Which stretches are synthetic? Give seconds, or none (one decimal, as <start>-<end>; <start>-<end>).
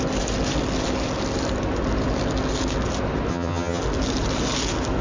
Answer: 3.3-3.8